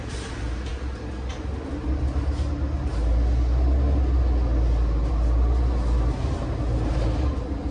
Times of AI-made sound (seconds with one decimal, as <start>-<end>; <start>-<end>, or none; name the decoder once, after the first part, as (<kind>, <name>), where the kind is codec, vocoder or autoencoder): none